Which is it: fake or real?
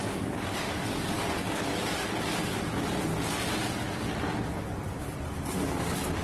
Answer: real